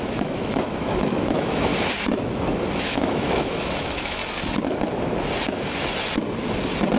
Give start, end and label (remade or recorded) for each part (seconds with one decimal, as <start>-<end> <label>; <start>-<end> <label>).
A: 0.0-1.7 remade; 1.7-2.8 recorded; 2.8-4.2 remade; 4.2-7.0 recorded